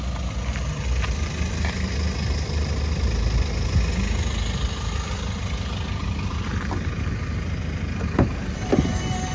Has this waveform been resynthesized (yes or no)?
no